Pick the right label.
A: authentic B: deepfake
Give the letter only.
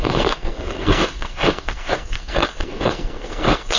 B